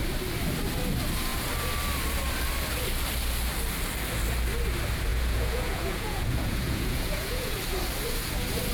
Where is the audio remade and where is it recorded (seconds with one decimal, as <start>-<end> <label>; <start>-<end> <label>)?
0.0-5.1 recorded; 5.1-7.5 remade; 7.5-8.7 recorded